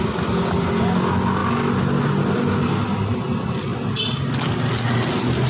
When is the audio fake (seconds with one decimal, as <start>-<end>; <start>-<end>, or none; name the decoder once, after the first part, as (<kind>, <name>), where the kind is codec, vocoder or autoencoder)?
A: none